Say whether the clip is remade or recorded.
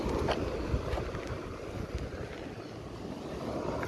recorded